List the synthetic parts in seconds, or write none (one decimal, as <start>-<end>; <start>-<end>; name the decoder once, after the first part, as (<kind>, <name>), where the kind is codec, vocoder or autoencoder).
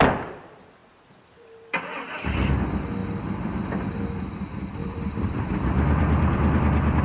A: 0.8-2.6 (vocoder, BigVGAN v2); 3.0-3.8; 4.8-7.0